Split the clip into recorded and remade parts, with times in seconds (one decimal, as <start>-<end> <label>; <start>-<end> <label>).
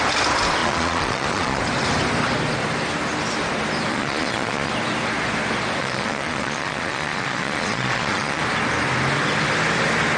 0.0-0.6 recorded; 0.6-1.6 remade; 1.6-3.9 recorded; 3.9-4.7 remade; 4.7-5.8 recorded; 5.8-8.4 remade; 8.4-10.2 recorded